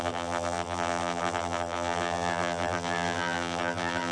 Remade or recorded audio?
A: remade